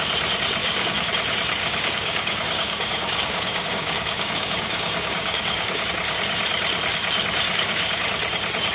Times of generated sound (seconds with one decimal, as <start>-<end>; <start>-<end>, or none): 0.6-1.1; 1.6-5.9; 7.5-8.1